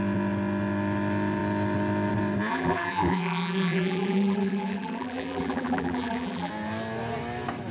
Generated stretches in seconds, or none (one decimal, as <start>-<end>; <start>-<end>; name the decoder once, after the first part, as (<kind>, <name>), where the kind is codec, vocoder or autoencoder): 2.5-6.5 (vocoder, BigVGAN v2)